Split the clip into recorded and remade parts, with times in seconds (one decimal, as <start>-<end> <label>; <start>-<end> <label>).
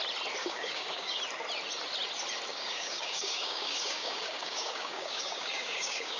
0.0-0.4 recorded; 0.4-1.2 remade; 1.2-2.5 recorded; 2.5-6.2 remade